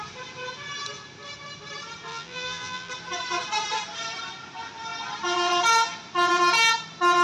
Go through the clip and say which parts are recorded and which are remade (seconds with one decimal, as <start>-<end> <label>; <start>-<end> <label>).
0.0-2.1 recorded; 2.1-2.9 remade; 2.9-7.2 recorded